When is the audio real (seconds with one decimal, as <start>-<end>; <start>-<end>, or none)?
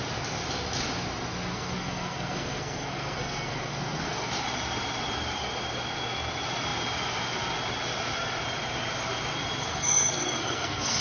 0.0-1.5; 4.3-9.7